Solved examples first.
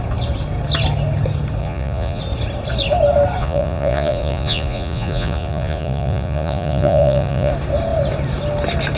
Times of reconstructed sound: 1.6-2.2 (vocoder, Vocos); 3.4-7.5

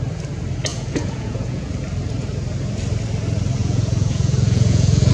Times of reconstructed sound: 0.7-1.7 (vocoder, Vocos); 3.6-5.1

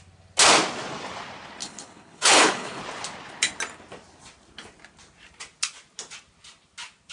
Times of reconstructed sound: 1.6-2.8 (codec, HILCodec)

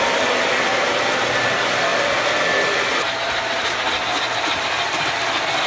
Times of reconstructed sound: 0.7-1.3 (vocoder, BigVGAN v2)

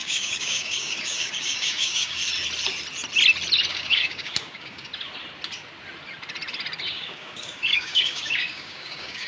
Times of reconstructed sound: 0.0-2.2 (codec, DAC); 3.7-4.9; 6.9-9.3

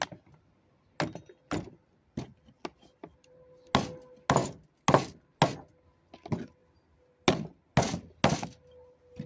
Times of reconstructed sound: none

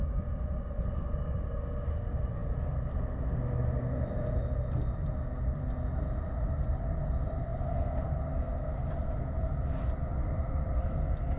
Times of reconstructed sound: none